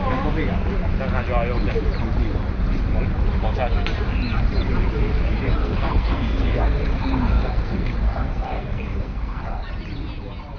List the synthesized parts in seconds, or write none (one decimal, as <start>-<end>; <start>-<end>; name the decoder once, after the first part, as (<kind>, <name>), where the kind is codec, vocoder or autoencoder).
5.6-9.7 (codec, SNAC)